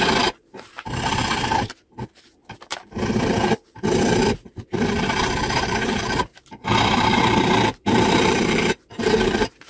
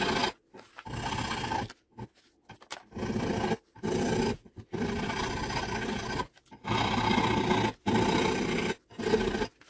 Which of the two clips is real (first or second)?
second